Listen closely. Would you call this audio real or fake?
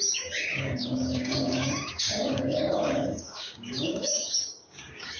fake